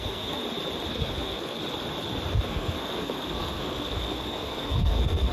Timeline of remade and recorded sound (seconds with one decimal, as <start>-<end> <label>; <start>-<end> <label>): 0.0-0.4 remade; 0.4-0.9 recorded; 0.9-1.6 remade; 1.6-2.3 recorded; 2.3-5.3 remade